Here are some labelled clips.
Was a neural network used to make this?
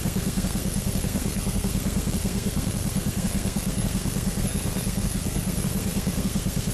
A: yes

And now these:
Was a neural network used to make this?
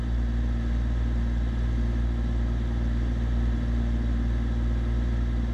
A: no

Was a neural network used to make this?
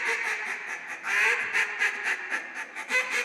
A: no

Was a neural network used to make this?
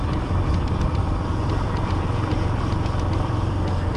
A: yes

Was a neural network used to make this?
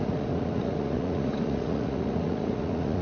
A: yes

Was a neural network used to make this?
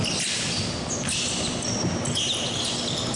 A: no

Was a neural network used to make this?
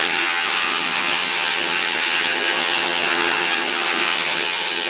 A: yes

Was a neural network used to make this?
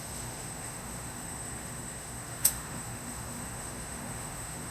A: yes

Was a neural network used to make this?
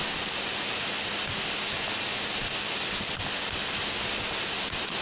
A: no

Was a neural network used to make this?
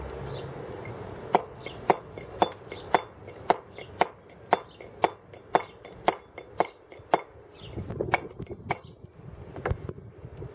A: no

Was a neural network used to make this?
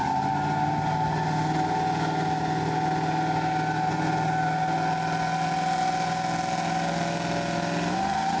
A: no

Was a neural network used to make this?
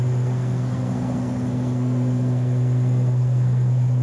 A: yes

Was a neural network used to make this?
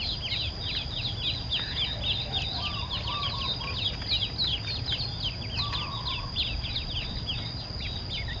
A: no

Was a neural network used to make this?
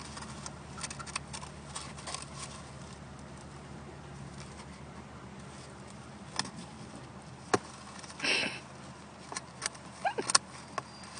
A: no